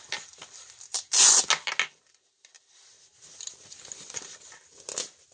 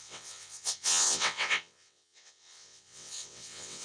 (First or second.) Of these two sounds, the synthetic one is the second